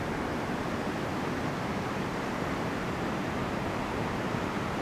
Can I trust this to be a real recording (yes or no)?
no